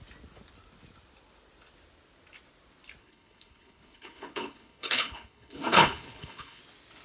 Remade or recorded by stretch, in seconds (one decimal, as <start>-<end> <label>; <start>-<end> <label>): 0.0-3.0 recorded; 3.0-6.6 remade; 6.6-7.0 recorded